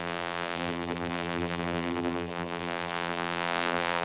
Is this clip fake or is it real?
fake